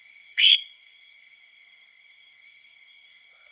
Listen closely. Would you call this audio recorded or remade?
remade